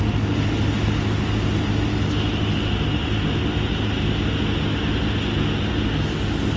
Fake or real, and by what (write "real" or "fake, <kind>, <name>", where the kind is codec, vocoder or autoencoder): real